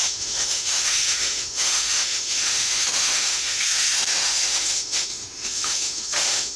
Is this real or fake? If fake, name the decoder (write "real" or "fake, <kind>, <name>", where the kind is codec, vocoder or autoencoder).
fake, autoencoder, DAC-VAE